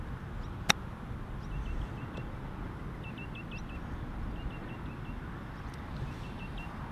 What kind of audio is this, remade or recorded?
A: recorded